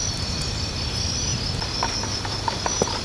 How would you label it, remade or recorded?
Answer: recorded